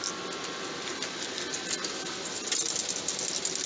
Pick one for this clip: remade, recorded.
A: recorded